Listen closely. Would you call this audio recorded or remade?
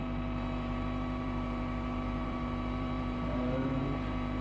remade